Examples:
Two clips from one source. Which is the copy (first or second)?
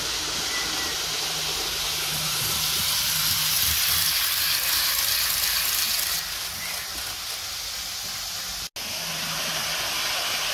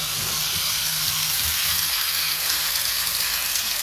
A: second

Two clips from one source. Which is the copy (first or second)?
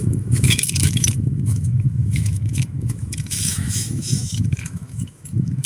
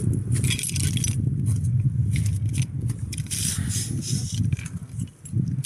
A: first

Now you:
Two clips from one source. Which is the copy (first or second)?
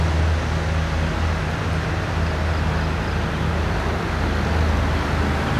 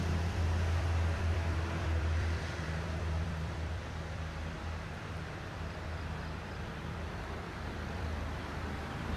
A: second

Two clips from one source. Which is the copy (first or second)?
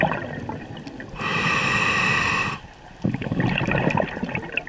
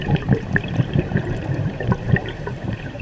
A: second